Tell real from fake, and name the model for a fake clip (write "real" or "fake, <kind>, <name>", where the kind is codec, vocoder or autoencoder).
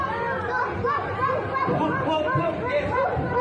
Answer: real